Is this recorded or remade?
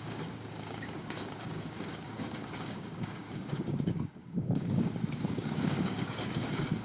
remade